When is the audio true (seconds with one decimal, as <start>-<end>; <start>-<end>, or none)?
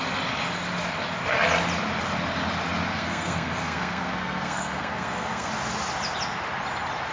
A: 0.0-2.9; 5.5-7.1